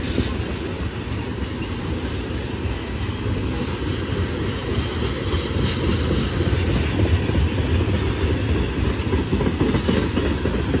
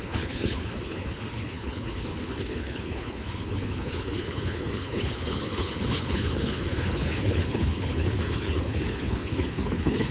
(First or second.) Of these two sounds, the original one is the first